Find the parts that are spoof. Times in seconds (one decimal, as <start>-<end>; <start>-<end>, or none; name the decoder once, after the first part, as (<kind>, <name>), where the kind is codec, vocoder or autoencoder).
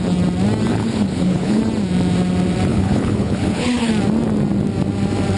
0.7-1.6 (codec, HILCodec); 2.7-3.9